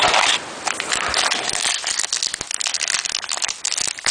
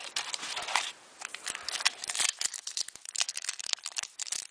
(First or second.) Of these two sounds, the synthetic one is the second